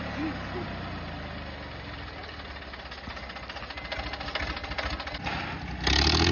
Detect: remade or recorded recorded